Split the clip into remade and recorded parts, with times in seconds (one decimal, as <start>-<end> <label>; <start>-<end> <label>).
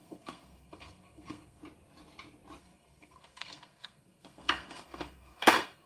0.0-1.6 remade; 1.6-2.6 recorded; 2.6-5.9 remade